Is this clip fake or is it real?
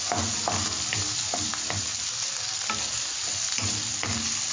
real